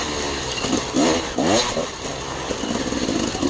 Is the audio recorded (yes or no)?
yes